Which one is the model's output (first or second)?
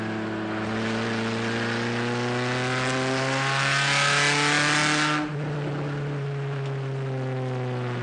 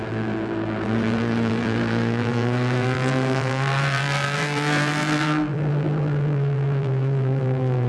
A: second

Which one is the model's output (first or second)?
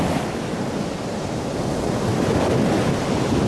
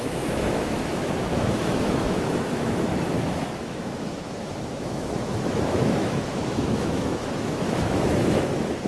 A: second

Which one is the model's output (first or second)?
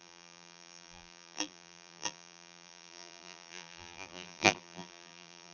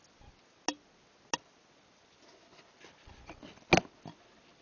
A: first